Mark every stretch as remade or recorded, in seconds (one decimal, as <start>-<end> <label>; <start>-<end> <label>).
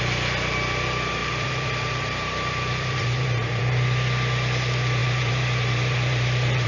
0.0-1.2 recorded; 1.2-3.6 remade; 3.6-5.0 recorded; 5.0-6.7 remade